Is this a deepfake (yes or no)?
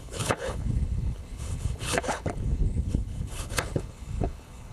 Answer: yes